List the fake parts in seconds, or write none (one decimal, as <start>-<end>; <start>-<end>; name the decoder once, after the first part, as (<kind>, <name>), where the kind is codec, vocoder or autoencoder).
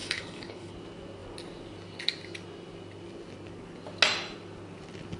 0.0-0.7 (codec, HILCodec)